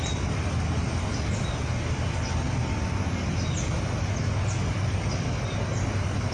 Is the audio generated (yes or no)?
no